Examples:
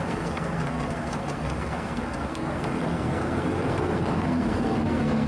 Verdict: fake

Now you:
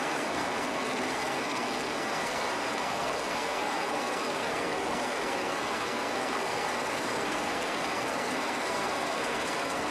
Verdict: fake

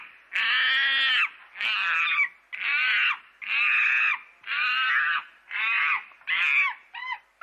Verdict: real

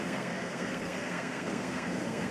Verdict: fake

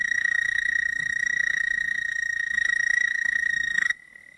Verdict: fake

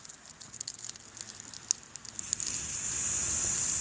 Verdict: real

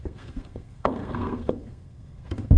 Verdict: fake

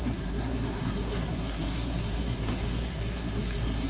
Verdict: fake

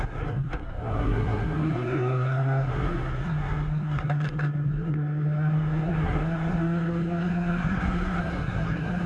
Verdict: fake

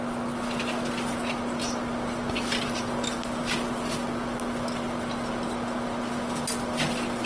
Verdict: real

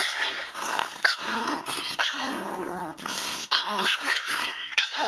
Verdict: fake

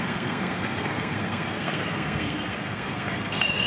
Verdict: fake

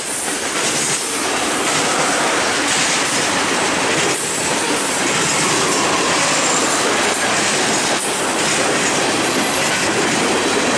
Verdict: real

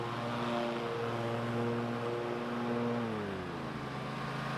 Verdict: real